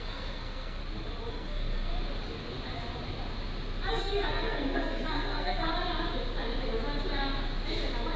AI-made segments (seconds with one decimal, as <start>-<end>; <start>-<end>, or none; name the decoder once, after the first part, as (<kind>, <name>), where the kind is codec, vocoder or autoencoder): 0.0-0.8 (codec, SNAC); 1.3-1.9; 3.9-5.7